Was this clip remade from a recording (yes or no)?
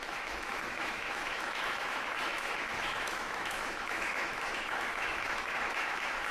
yes